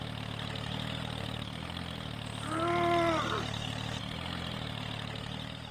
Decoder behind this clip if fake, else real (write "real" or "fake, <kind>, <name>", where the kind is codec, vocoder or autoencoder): real